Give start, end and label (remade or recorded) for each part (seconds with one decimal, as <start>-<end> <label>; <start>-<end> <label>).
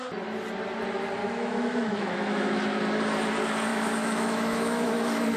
0.0-1.2 recorded; 1.2-2.8 remade; 2.8-3.7 recorded; 3.7-5.4 remade